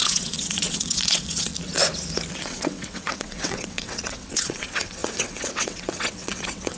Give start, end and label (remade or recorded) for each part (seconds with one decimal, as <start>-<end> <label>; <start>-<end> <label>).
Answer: 0.0-1.5 remade; 1.5-2.3 recorded; 2.3-6.8 remade